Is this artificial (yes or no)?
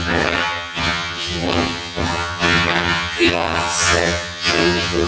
yes